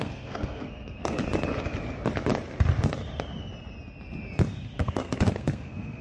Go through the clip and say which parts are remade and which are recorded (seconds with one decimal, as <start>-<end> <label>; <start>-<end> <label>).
0.0-1.2 remade; 1.2-4.8 recorded; 4.8-6.0 remade